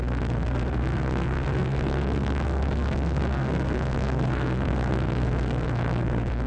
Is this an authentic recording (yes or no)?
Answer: no